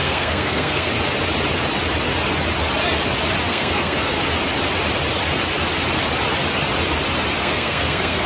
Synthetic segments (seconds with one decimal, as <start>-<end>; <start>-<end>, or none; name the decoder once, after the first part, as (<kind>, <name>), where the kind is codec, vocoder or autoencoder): 0.0-0.9 (codec, SNAC); 3.5-4.2; 7.4-8.3